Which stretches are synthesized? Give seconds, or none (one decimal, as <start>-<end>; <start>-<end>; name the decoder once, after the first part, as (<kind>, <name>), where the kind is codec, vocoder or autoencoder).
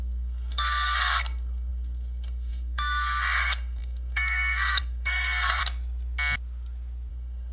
0.0-5.6 (codec, SNAC); 7.1-7.5